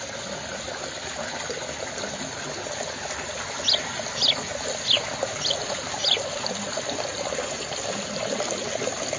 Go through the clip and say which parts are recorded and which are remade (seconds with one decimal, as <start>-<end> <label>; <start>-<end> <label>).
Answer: 0.0-9.2 recorded